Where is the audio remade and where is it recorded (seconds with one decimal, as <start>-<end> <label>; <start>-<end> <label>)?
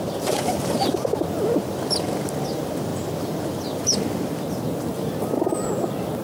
0.0-6.2 recorded